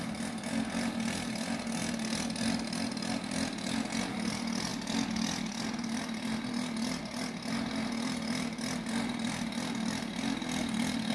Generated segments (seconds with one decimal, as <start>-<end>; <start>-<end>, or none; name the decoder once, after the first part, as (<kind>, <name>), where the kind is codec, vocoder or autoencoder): none